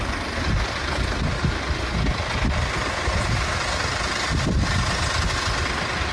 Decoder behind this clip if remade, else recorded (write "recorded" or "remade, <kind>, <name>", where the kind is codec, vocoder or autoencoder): recorded